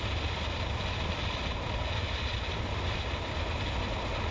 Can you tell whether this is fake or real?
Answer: real